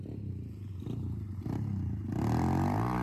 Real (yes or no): yes